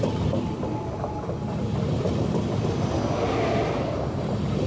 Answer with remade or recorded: recorded